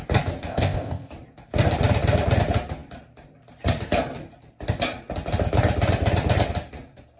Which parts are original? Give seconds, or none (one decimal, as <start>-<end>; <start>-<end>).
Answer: 0.0-0.5; 1.1-7.2